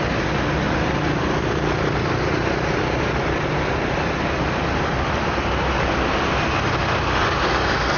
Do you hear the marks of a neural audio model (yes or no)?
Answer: no